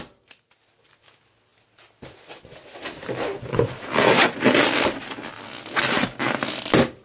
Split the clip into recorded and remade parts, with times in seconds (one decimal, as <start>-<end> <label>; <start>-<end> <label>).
0.0-7.0 recorded